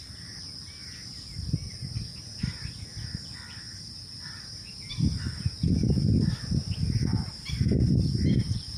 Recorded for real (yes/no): yes